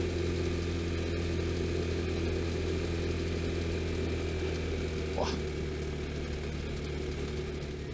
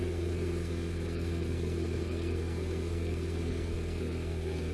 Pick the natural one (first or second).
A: first